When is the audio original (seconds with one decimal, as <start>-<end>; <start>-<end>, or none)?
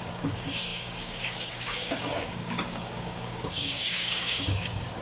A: none